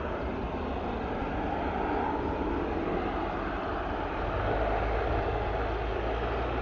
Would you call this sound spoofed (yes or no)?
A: no